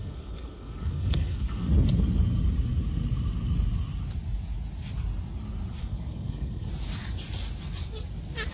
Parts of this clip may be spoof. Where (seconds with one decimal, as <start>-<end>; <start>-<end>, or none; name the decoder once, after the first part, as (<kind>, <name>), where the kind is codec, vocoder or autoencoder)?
0.0-1.7 (codec, SNAC); 5.8-6.7